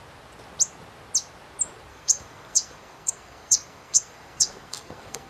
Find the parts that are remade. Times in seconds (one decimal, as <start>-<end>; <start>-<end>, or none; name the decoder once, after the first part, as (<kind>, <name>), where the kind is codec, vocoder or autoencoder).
1.9-5.3 (codec, SNAC)